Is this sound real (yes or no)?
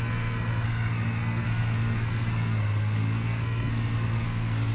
no